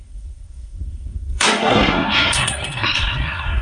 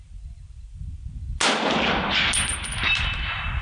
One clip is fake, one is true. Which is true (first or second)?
second